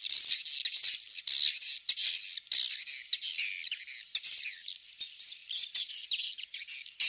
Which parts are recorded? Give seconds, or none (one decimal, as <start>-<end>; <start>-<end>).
0.0-5.4; 6.3-7.1